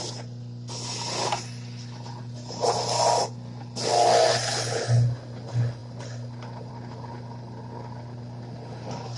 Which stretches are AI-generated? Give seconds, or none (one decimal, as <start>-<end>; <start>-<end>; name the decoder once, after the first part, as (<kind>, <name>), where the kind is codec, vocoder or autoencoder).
none